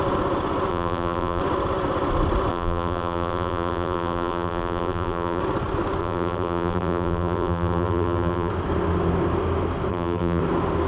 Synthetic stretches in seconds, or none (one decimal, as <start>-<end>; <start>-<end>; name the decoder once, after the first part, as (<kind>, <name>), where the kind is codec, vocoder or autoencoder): 0.7-1.4 (vocoder, BigVGAN v2); 2.5-5.4; 6.0-8.5; 9.9-10.4